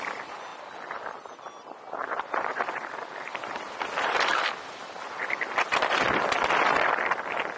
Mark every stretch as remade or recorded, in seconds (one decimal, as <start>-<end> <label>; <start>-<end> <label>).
0.0-2.0 recorded; 2.0-3.6 remade; 3.6-7.6 recorded